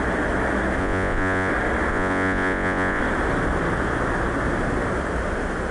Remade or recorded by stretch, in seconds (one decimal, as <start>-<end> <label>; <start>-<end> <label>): 0.0-0.8 recorded; 0.8-1.5 remade; 1.5-1.9 recorded; 1.9-3.0 remade; 3.0-5.7 recorded